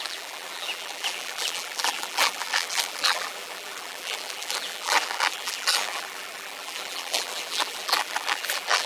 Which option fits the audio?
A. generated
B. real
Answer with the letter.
A